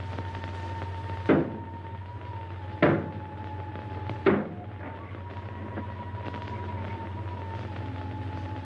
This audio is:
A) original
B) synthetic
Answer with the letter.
A